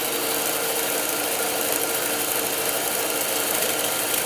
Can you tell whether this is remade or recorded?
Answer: recorded